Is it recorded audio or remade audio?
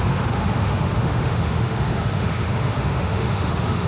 remade